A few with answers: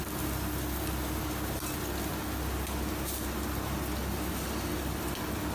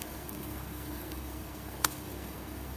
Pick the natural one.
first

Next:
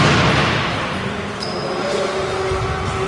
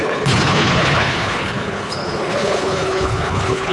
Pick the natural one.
first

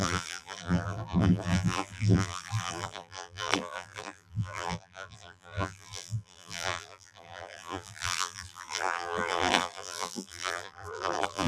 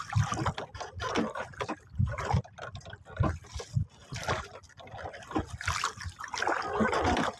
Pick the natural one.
second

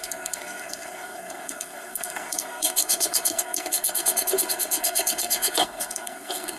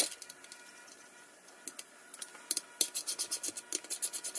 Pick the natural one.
second